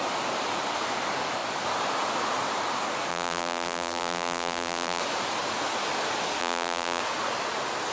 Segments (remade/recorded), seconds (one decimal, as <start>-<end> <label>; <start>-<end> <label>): 0.0-3.1 recorded; 3.1-5.0 remade; 5.0-6.4 recorded; 6.4-7.0 remade; 7.0-7.9 recorded

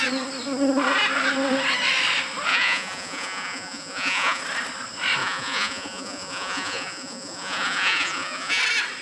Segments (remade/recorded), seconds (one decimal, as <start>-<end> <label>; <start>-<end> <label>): 0.0-2.5 recorded; 2.5-4.4 remade; 4.4-5.2 recorded; 5.2-8.6 remade; 8.6-9.0 recorded

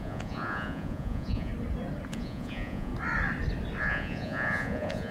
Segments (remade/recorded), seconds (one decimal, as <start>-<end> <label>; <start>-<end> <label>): 0.0-1.5 remade; 1.5-2.1 recorded; 2.1-2.9 remade; 2.9-3.8 recorded; 3.8-5.1 remade

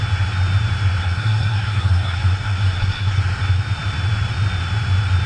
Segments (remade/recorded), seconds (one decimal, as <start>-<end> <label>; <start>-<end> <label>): 0.0-1.0 recorded; 1.0-3.2 remade; 3.2-5.3 recorded

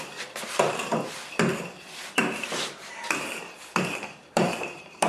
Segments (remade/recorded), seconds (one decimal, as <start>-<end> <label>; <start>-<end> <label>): 0.0-0.9 remade; 0.9-4.0 recorded; 4.0-5.1 remade

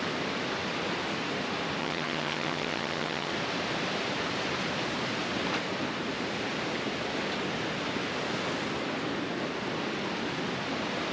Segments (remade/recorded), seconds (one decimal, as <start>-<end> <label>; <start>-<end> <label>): 0.0-1.8 recorded; 1.8-3.3 remade; 3.3-11.1 recorded

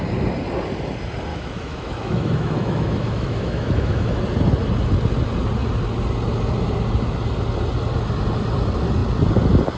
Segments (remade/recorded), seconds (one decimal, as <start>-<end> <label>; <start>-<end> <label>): 0.0-1.3 recorded; 1.3-4.2 remade; 4.2-9.8 recorded

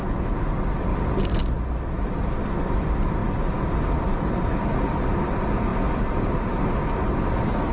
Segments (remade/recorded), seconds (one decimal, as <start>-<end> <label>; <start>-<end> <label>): 0.0-7.7 recorded